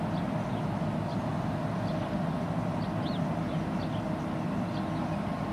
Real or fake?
real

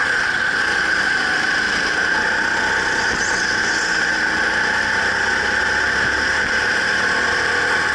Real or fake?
real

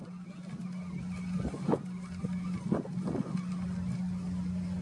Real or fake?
real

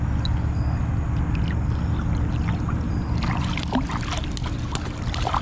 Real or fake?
real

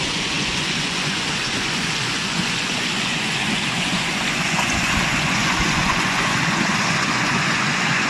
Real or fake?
fake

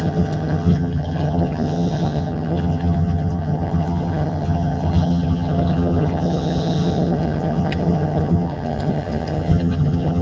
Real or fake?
fake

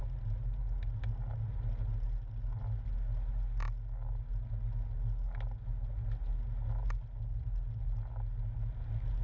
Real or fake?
real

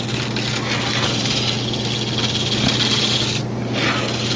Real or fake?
real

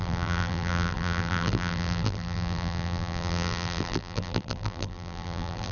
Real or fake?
fake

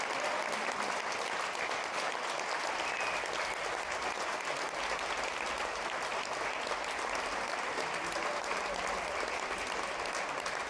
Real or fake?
real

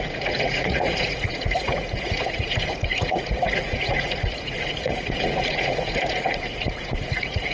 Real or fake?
fake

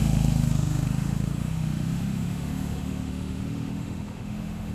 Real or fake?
fake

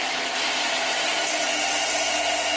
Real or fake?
real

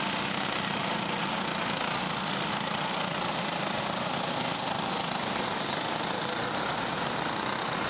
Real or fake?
real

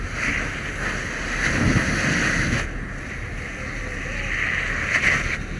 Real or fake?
real